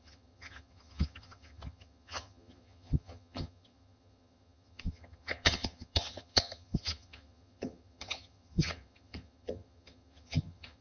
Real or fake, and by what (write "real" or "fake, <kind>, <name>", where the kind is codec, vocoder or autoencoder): fake, vocoder, HiFi-GAN